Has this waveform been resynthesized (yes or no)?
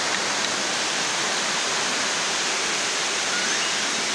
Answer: no